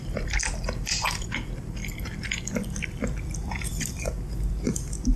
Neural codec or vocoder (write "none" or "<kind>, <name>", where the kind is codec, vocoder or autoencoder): vocoder, BigVGAN v2